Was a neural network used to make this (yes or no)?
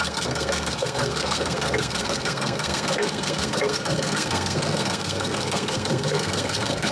yes